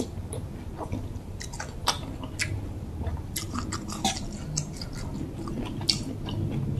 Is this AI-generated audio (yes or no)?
no